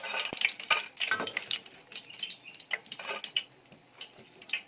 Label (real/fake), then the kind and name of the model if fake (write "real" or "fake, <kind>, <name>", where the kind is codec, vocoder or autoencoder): real